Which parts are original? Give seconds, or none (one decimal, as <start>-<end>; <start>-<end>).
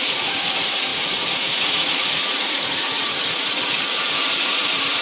none